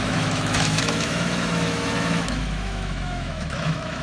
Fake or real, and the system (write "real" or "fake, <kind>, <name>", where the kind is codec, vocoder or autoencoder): fake, autoencoder, DAC-VAE